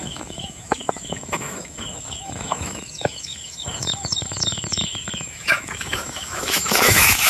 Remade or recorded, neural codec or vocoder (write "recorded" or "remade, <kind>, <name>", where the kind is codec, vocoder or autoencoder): remade, autoencoder, DAC-VAE